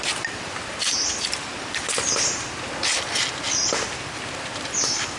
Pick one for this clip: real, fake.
real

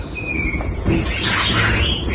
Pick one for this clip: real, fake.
fake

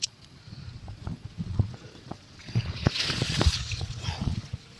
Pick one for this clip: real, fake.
fake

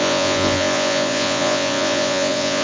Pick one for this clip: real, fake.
fake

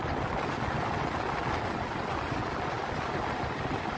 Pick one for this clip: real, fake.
real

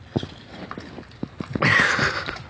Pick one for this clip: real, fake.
real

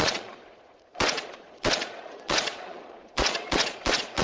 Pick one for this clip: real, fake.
fake